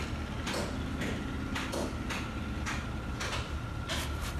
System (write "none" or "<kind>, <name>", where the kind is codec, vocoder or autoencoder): none